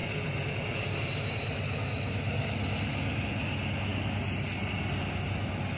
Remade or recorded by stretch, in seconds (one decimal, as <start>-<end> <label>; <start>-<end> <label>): 0.0-5.8 recorded